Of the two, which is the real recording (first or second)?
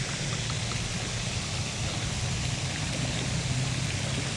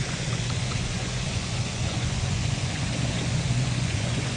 first